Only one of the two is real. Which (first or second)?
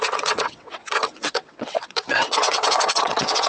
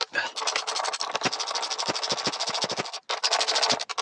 second